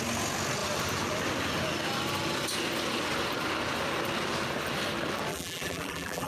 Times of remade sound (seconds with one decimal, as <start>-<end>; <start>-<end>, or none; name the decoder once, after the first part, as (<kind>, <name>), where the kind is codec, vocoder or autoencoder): 5.3-6.3 (vocoder, BigVGAN v2)